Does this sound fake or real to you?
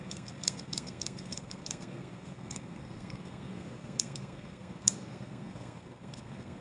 fake